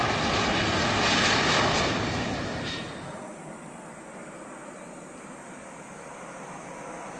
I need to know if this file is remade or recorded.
recorded